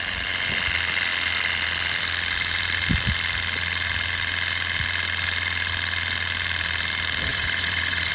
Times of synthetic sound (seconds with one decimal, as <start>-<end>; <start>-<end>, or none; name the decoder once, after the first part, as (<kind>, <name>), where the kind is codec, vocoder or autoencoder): 7.3-8.1 (vocoder, Vocos)